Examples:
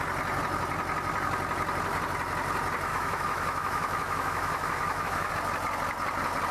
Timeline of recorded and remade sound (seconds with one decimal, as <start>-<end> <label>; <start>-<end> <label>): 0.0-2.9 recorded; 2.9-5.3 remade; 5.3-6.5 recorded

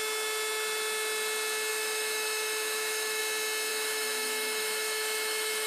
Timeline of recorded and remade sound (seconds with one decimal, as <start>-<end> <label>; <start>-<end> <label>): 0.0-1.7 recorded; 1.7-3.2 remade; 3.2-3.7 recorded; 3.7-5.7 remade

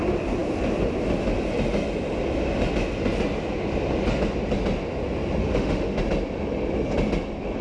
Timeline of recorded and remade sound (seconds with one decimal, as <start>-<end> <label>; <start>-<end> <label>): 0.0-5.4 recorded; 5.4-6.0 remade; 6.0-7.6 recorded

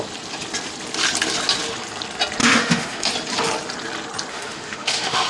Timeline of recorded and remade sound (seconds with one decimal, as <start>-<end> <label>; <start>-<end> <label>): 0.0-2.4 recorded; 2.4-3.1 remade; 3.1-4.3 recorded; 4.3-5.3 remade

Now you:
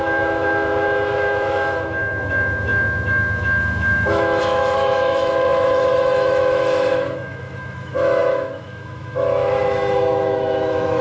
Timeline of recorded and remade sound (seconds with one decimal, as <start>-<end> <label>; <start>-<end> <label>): 0.0-11.0 remade